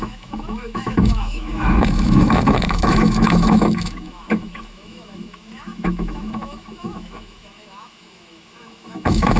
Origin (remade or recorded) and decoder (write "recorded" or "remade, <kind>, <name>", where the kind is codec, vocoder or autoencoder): remade, autoencoder, DAC-VAE